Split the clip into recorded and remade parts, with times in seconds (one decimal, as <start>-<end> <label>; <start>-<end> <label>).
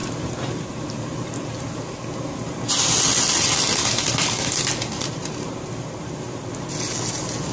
0.0-1.8 remade; 1.8-3.8 recorded; 3.8-6.5 remade; 6.5-7.5 recorded